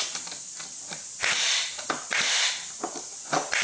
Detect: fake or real real